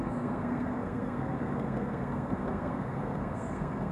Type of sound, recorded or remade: remade